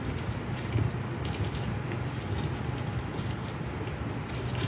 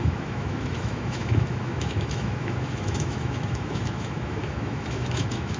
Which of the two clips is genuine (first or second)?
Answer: first